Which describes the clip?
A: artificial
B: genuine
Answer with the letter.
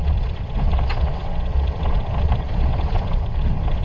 A